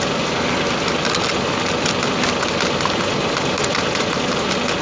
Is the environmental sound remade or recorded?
recorded